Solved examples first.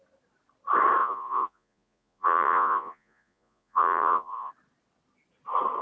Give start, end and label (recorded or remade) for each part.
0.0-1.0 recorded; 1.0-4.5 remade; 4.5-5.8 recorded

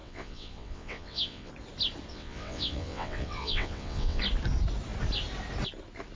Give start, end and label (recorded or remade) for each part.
0.0-1.5 remade; 1.5-2.1 recorded; 2.1-4.2 remade; 4.2-6.2 recorded

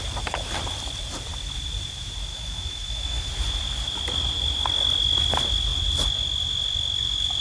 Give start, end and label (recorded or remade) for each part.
0.0-2.3 recorded; 2.3-3.3 remade; 3.3-7.4 recorded

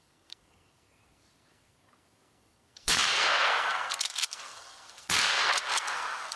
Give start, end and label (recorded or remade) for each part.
0.0-6.4 remade

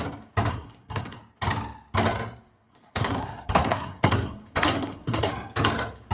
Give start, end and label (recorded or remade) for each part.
0.0-0.5 recorded; 0.5-1.2 remade; 1.2-2.7 recorded; 2.7-5.3 remade; 5.3-6.1 recorded

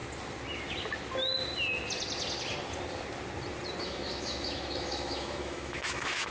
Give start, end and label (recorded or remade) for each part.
0.0-3.8 recorded; 3.8-6.3 remade

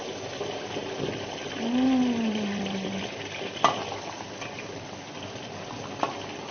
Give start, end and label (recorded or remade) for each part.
0.0-0.8 recorded; 0.8-4.7 remade; 4.7-6.5 recorded

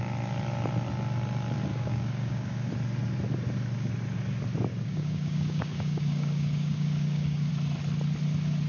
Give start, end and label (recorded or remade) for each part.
0.0-1.7 recorded; 1.7-2.7 remade; 2.7-4.7 recorded; 4.7-7.5 remade; 7.5-8.7 recorded